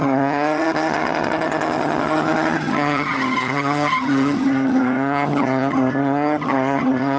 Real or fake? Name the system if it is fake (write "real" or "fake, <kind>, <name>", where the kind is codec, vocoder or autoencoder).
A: fake, vocoder, HiFi-GAN